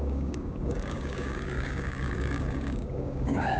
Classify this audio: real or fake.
fake